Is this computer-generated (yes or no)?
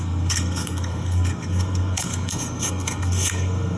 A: yes